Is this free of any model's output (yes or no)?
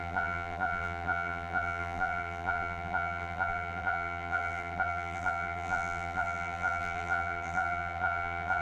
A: no